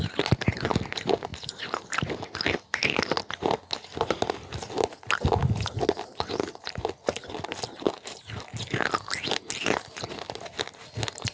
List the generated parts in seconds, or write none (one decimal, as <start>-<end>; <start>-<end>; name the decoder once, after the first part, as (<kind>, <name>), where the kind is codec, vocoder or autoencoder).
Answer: none